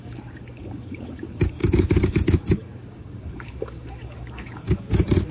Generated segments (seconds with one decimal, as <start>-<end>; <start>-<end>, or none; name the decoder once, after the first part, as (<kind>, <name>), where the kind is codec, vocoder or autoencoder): 0.0-5.3 (codec, DAC)